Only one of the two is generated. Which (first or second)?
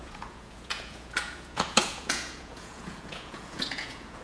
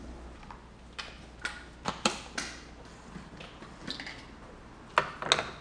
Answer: first